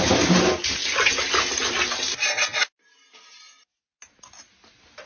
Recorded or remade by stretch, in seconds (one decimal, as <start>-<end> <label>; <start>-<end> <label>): 0.0-5.1 recorded